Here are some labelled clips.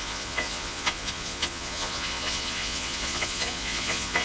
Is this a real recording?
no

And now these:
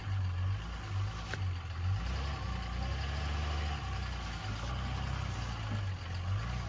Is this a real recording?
yes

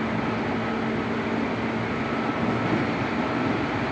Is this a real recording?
yes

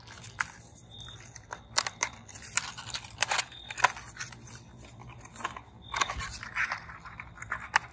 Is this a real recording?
yes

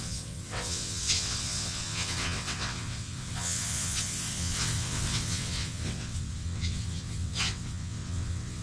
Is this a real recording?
no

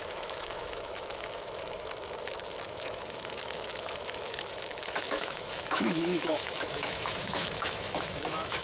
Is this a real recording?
no